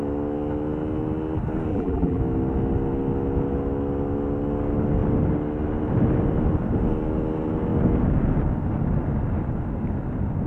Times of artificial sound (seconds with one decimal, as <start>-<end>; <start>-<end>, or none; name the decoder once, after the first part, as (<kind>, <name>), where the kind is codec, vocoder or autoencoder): 1.7-2.2 (vocoder, BigVGAN v2)